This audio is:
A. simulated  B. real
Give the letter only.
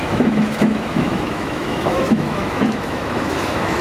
A